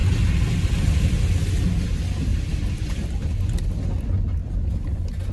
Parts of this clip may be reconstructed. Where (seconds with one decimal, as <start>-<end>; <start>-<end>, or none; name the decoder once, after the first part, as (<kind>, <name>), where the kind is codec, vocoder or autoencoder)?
none